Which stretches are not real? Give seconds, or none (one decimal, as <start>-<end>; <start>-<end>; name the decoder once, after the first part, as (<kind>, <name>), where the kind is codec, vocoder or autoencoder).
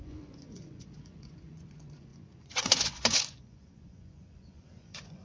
0.0-5.2 (vocoder, Vocos)